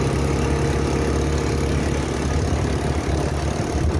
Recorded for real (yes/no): yes